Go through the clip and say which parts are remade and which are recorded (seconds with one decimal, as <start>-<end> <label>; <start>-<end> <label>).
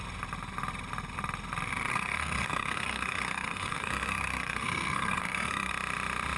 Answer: 0.0-1.9 recorded; 1.9-5.7 remade; 5.7-6.4 recorded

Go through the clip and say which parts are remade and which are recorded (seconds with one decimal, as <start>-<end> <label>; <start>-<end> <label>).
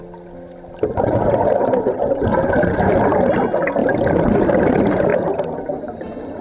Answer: 0.0-5.1 recorded; 5.1-6.4 remade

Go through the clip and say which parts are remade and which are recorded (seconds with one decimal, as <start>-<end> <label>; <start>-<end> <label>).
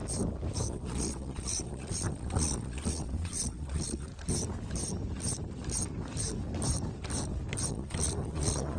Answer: 0.0-0.7 recorded; 0.7-4.1 remade; 4.1-7.7 recorded; 7.7-8.8 remade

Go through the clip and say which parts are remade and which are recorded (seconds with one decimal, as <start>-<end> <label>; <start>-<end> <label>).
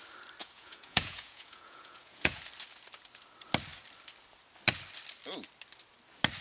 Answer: 0.0-0.4 recorded; 0.4-2.4 remade; 2.4-6.4 recorded